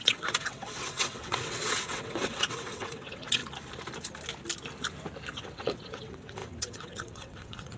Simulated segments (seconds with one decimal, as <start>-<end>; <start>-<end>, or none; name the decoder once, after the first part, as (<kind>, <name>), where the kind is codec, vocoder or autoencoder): 0.0-3.4 (vocoder, WaveNeXt); 5.3-7.8